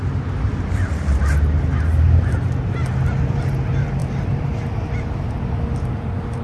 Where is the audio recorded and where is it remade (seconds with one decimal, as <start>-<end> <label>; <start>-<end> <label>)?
0.0-0.5 recorded; 0.5-1.2 remade; 1.2-4.0 recorded; 4.0-4.6 remade; 4.6-6.4 recorded

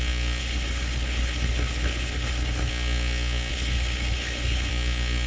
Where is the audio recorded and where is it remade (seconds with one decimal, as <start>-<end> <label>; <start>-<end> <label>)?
0.0-0.4 recorded; 0.4-2.7 remade; 2.7-3.5 recorded; 3.5-4.7 remade; 4.7-5.3 recorded